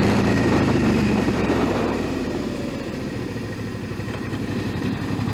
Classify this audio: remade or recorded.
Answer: remade